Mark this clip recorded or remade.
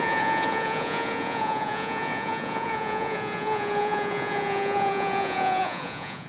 remade